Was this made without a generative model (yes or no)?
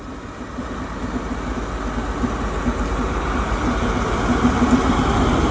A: yes